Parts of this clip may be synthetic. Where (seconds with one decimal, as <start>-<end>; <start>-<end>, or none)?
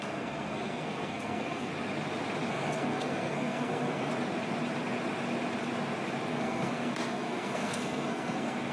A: 0.0-1.7; 2.5-4.1; 6.3-8.7